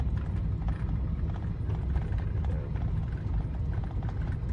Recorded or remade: recorded